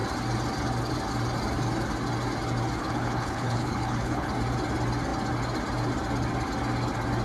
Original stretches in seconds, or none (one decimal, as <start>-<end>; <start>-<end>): 0.0-2.8; 4.3-7.2